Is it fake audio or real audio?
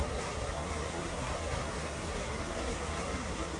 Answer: fake